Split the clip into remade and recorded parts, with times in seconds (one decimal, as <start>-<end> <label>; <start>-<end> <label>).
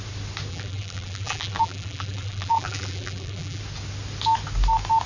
0.0-0.5 recorded; 0.5-3.6 remade; 3.6-5.1 recorded